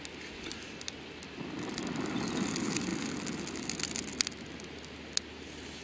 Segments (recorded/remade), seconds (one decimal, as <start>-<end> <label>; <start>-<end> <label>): 0.0-5.8 recorded